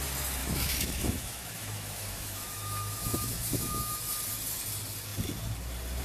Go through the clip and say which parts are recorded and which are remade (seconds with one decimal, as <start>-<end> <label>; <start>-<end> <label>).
0.0-0.4 recorded; 0.4-4.0 remade; 4.0-6.0 recorded